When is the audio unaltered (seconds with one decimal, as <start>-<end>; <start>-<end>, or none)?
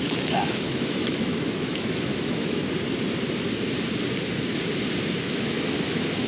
2.6-5.0